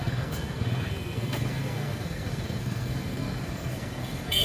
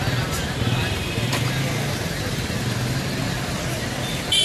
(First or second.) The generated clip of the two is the first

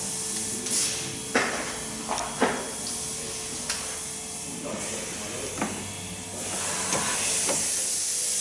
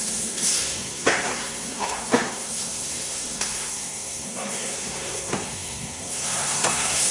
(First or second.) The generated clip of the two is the second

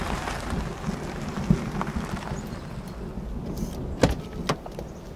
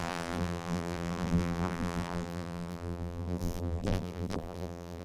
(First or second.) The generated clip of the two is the second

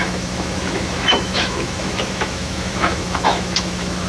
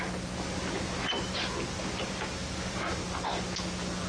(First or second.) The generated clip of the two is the first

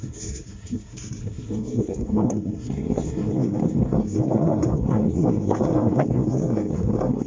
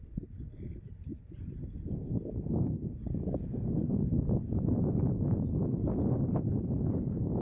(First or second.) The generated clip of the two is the first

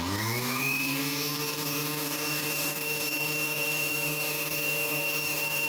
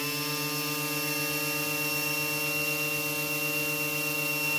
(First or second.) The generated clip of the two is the first